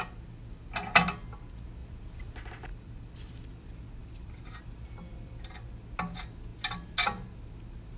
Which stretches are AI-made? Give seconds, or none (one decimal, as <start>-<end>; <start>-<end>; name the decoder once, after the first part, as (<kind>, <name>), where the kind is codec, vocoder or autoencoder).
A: 1.8-2.3 (vocoder, BigVGAN v2); 2.7-3.4; 4.0-5.3